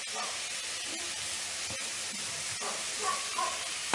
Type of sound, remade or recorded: recorded